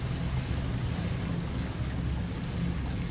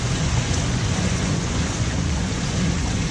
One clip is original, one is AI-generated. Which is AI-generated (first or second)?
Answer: second